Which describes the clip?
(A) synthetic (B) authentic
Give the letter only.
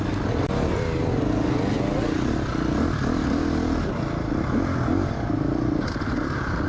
B